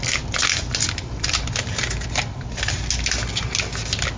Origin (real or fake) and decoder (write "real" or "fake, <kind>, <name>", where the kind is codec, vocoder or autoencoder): real